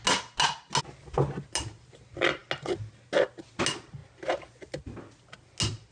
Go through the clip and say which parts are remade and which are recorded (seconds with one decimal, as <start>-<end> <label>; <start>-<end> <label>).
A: 0.0-5.9 recorded